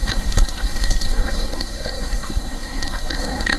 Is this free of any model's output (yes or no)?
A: no